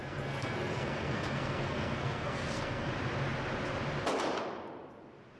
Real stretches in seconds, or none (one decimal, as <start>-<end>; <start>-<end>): 2.9-5.4